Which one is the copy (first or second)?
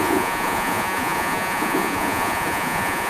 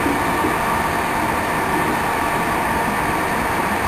first